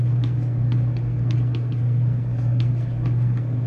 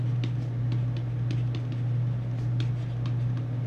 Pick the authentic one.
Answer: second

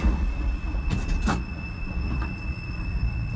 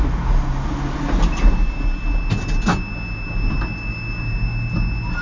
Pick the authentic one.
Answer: second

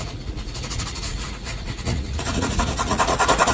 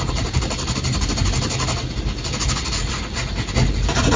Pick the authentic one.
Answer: second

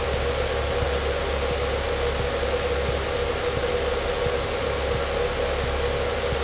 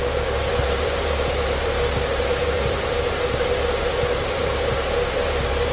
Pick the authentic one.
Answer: first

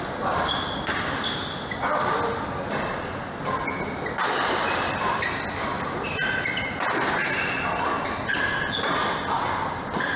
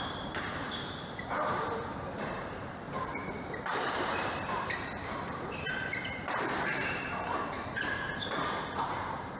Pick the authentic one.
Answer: first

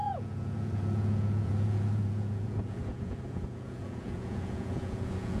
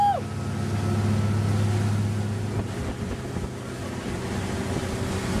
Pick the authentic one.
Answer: second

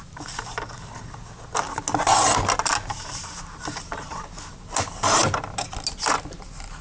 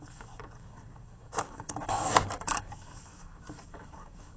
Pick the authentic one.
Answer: first